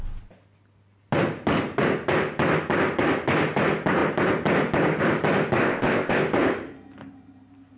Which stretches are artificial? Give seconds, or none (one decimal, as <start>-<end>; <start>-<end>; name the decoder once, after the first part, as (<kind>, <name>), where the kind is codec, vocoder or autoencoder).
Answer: 5.6-6.2 (codec, ZipCodec)